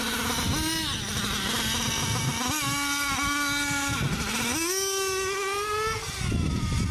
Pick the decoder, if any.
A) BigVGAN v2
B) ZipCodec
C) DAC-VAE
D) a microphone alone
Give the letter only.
D